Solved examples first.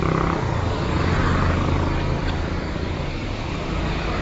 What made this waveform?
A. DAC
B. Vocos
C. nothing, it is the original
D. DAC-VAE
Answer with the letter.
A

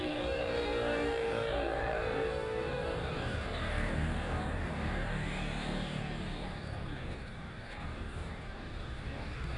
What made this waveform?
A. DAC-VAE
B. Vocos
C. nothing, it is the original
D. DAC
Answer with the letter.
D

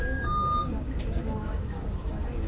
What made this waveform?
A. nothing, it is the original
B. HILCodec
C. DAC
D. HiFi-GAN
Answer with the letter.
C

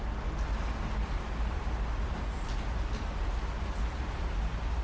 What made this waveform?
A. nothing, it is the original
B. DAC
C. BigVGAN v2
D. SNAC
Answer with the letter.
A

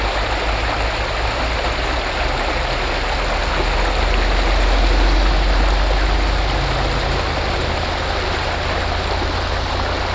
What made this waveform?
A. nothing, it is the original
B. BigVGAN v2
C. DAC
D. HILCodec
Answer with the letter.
A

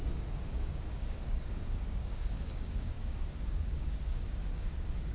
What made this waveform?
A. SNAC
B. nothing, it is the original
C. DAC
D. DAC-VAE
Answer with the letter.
C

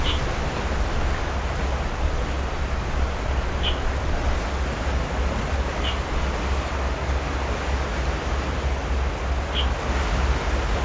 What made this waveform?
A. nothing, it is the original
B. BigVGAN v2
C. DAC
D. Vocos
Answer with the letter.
A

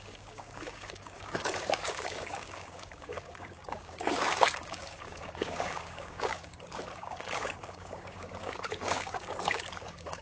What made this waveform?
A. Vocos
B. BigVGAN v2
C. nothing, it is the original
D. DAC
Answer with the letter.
D